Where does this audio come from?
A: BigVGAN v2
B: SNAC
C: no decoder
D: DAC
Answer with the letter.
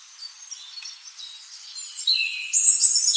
C